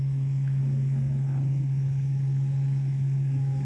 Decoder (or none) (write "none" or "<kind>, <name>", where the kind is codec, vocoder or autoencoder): codec, SNAC